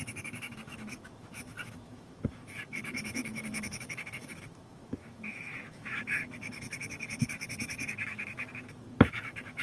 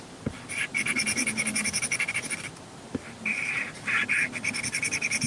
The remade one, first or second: first